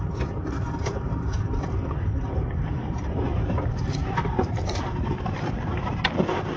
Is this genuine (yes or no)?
no